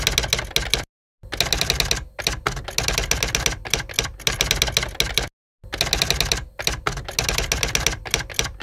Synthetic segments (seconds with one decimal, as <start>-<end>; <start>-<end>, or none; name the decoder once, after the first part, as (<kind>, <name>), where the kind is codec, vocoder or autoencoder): none